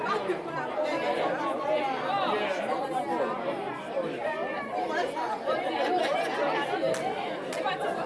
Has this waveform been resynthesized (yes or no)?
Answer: no